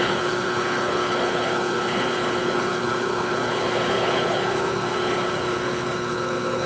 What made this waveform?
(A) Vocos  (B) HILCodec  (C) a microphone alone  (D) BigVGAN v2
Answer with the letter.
B